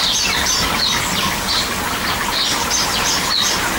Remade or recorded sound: recorded